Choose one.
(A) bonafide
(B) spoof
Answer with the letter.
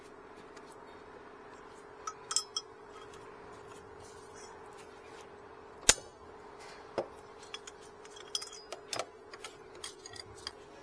A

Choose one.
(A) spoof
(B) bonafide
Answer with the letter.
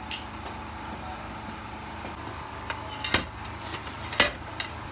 B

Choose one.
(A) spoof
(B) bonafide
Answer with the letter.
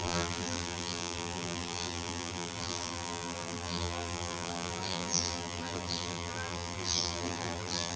A